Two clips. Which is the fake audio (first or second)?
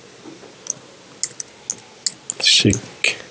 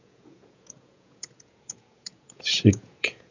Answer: second